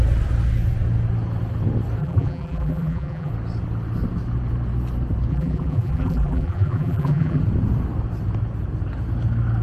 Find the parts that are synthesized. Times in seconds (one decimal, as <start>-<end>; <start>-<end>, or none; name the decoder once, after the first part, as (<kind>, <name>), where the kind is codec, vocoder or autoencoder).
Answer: 2.0-3.3 (vocoder, BigVGAN v2); 5.3-7.4